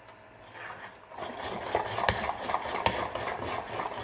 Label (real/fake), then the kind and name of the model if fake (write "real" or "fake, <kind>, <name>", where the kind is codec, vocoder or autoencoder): real